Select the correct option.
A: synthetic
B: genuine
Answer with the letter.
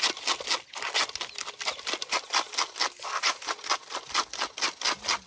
B